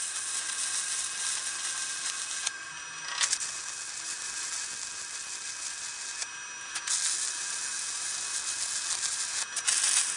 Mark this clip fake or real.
real